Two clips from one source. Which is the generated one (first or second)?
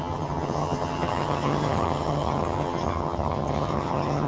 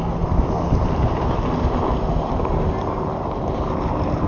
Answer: first